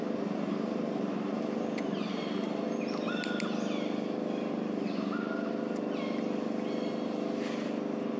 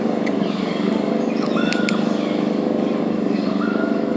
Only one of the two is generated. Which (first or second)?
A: second